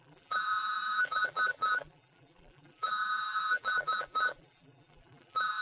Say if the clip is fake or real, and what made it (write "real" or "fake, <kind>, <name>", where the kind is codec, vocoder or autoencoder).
fake, vocoder, BigVGAN v2